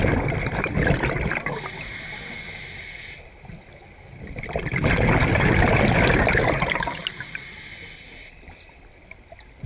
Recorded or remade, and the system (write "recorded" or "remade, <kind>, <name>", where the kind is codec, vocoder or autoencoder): recorded